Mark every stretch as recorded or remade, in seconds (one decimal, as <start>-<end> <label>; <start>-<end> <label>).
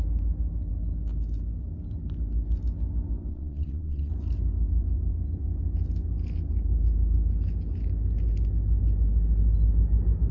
0.0-3.3 recorded; 3.3-4.1 remade; 4.1-10.3 recorded